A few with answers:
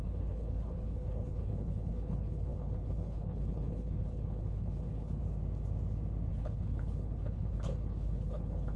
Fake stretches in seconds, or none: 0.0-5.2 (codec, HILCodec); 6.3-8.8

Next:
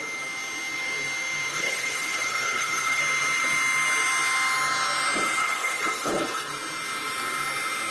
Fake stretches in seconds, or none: 1.5-3.0 (codec, HILCodec); 5.4-6.5

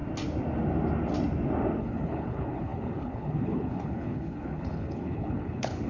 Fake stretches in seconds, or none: 1.8-5.9 (codec, HILCodec)

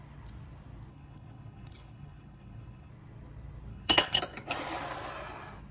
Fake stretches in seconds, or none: 0.9-2.9 (codec, HILCodec); 3.7-4.2

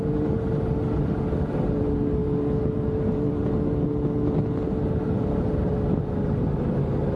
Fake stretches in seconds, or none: none